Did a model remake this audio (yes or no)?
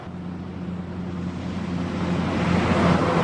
no